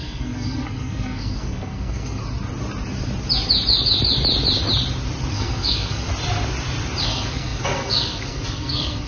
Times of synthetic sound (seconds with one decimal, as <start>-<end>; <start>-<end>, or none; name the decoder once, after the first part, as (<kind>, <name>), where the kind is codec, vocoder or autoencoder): 0.0-2.2 (codec, SNAC); 5.3-6.1; 7.0-9.1